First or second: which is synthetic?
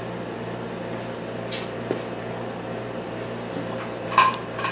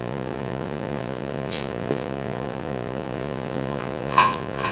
second